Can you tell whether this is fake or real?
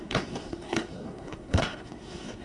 fake